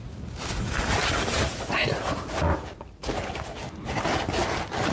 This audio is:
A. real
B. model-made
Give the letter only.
A